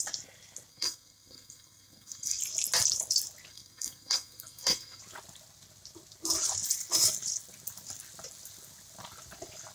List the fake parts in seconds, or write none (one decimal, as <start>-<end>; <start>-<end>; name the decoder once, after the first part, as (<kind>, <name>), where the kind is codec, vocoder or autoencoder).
0.7-2.4 (codec, SNAC); 3.5-5.0

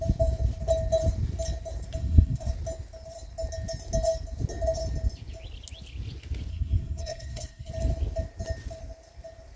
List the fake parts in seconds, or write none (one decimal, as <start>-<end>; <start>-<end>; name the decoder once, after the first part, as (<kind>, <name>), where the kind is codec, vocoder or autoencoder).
2.0-2.5 (codec, SNAC); 6.5-7.7